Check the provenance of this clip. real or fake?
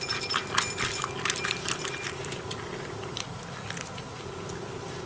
real